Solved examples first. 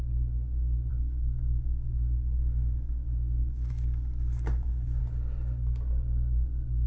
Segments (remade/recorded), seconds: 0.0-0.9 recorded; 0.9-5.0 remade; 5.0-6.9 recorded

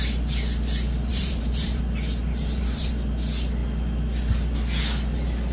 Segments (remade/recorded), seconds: 0.0-1.1 recorded; 1.1-1.8 remade; 1.8-2.2 recorded; 2.2-2.9 remade; 2.9-5.5 recorded

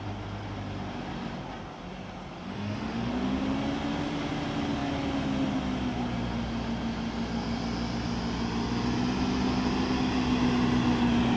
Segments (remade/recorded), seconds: 0.0-2.5 recorded; 2.5-3.1 remade; 3.1-11.4 recorded